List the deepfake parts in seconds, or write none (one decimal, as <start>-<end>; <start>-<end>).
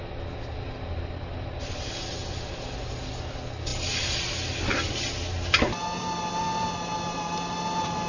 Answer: none